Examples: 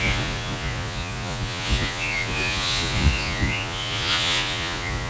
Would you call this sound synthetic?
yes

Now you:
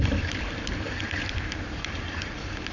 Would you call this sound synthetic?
no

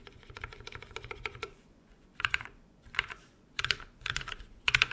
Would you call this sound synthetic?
yes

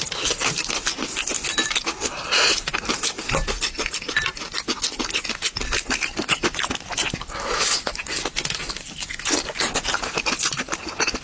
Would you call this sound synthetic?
no